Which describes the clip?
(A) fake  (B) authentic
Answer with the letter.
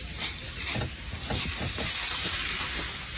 B